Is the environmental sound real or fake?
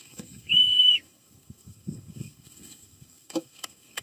fake